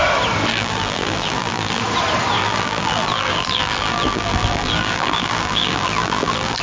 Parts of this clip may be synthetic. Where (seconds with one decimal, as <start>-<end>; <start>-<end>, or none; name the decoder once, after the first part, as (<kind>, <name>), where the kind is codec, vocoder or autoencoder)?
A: 0.5-1.8 (vocoder, BigVGAN v2); 2.4-6.6